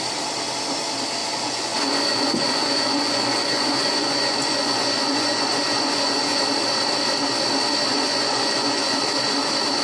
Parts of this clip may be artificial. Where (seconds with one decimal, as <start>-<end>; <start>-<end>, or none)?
1.2-6.4; 7.9-9.0